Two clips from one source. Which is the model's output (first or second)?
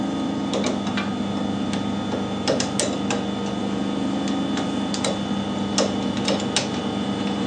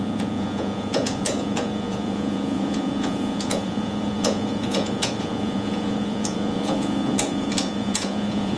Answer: second